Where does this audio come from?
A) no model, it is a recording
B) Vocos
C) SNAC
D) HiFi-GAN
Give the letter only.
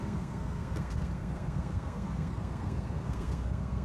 C